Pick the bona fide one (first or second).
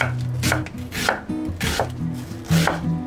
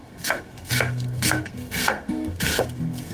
first